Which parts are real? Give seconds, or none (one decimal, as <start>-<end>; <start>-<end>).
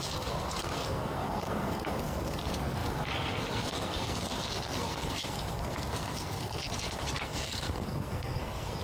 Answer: none